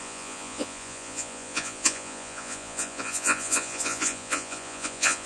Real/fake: fake